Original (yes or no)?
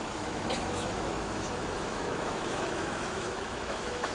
no